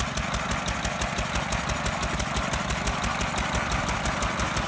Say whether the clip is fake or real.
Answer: real